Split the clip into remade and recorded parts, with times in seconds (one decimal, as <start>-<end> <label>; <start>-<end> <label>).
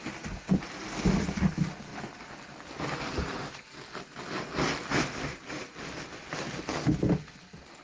0.0-7.8 recorded